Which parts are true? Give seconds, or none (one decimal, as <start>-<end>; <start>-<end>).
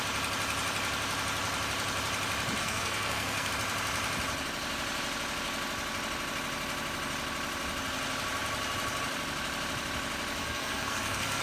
0.0-2.6; 3.5-10.4